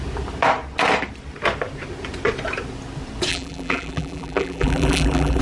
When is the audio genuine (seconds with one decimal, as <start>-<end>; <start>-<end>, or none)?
0.0-3.3